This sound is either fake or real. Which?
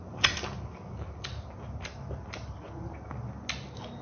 real